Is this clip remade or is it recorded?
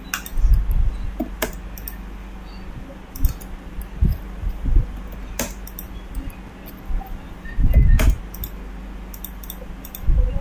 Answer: recorded